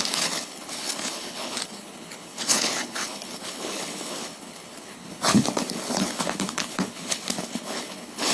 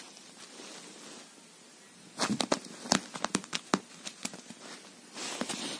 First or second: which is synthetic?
first